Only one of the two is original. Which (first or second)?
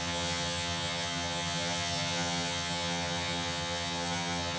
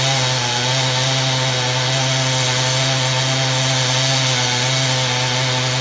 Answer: second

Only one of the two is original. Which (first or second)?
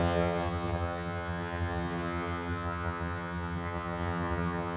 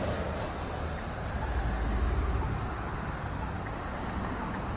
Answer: second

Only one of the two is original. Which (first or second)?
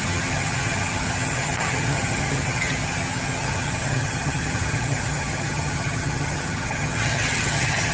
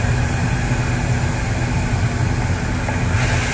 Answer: second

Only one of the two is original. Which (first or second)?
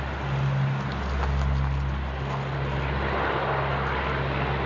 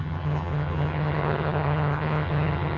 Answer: first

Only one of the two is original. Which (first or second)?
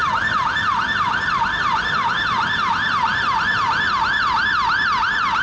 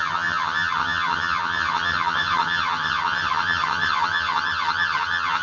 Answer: first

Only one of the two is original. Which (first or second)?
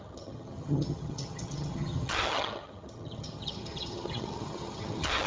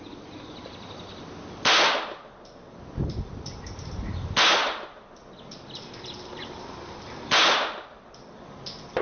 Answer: second